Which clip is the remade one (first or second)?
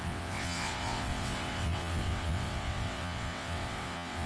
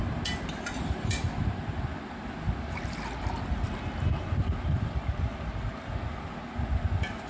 first